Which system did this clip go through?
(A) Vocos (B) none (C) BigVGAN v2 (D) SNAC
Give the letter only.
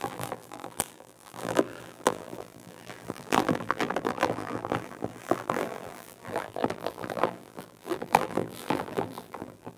C